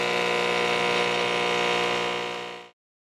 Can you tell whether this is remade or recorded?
recorded